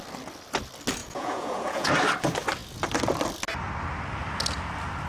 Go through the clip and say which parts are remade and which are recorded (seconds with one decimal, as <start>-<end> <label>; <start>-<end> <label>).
0.0-1.0 recorded; 1.0-1.9 remade; 1.9-5.1 recorded